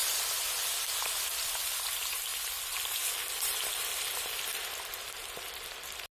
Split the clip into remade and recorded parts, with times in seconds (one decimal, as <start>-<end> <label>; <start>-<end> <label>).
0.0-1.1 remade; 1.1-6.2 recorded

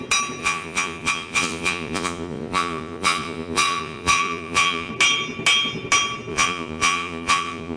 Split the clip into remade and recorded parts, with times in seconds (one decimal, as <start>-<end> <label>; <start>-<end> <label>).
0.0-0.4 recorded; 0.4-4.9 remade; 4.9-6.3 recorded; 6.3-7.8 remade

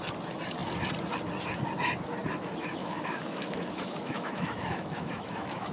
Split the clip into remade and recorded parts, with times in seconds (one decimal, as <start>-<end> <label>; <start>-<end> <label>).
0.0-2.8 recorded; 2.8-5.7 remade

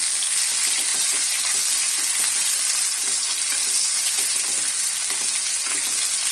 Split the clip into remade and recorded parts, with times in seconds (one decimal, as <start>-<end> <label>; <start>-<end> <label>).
0.0-0.9 recorded; 0.9-1.4 remade; 1.4-3.9 recorded; 3.9-4.4 remade; 4.4-6.3 recorded

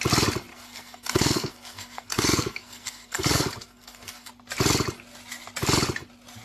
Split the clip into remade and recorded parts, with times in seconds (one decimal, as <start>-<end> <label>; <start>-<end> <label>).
0.0-0.5 recorded; 0.5-4.3 remade; 4.3-6.4 recorded

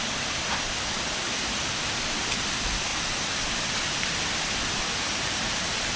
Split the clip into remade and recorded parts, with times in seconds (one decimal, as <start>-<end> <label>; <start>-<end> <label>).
0.0-6.0 recorded

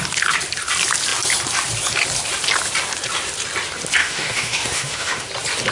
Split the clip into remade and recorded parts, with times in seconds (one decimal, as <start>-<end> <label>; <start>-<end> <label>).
0.0-4.0 recorded; 4.0-5.3 remade; 5.3-5.7 recorded